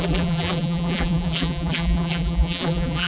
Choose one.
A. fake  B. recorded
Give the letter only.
A